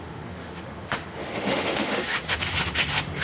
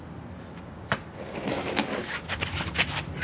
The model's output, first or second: first